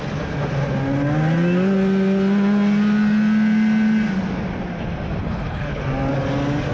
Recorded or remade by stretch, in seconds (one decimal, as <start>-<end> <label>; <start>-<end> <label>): 0.0-5.2 recorded; 5.2-5.8 remade; 5.8-6.7 recorded